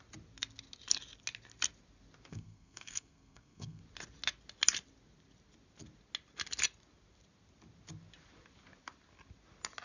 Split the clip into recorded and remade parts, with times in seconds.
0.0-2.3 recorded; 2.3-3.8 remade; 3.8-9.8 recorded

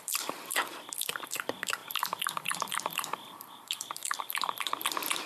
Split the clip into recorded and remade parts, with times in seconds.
0.0-5.3 remade